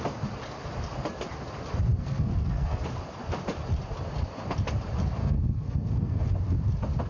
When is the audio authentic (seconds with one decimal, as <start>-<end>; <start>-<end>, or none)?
0.0-1.9; 2.8-5.2; 6.2-7.1